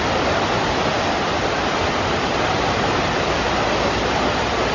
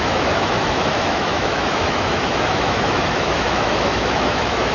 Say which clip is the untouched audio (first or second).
first